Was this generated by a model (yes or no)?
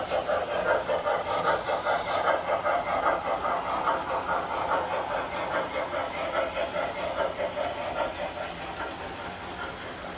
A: no